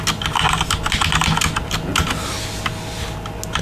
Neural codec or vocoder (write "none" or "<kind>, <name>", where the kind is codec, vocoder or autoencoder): none